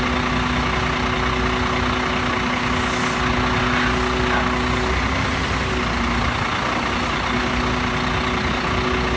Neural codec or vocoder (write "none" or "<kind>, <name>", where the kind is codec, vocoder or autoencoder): none